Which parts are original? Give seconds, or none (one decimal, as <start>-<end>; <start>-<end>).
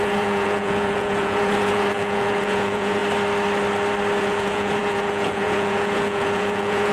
3.0-4.2